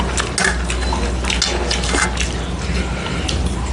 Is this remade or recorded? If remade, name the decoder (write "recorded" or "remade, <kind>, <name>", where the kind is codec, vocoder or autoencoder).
recorded